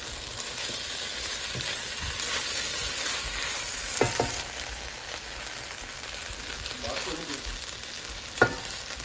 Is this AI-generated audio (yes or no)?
no